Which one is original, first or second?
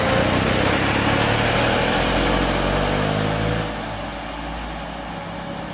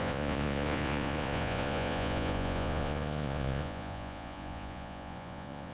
first